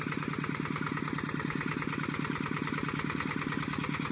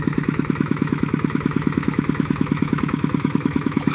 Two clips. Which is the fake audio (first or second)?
second